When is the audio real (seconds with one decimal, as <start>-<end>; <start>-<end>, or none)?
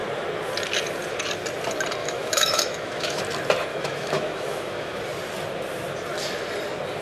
0.0-2.0; 3.2-3.7; 5.0-7.0